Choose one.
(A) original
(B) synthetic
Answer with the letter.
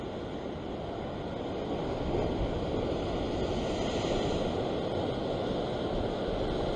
A